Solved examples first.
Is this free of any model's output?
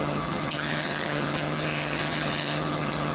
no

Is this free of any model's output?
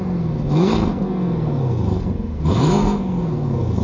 no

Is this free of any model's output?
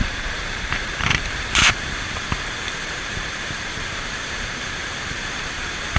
no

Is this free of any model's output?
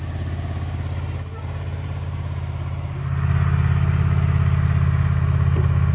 yes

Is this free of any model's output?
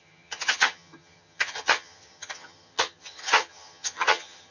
no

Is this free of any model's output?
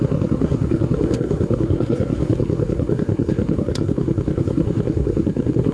no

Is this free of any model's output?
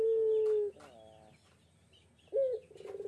yes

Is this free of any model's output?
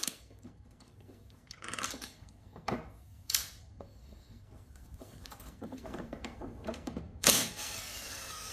no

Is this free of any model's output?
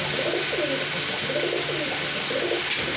yes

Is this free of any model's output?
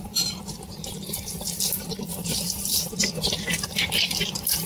no